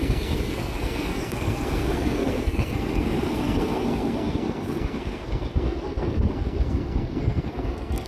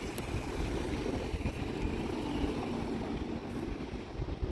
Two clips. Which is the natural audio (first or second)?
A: second